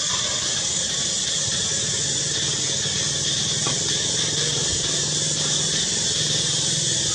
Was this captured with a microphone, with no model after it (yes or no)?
yes